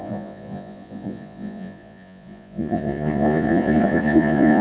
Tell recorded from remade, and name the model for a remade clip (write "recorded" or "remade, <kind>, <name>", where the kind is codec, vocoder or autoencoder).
remade, vocoder, Vocos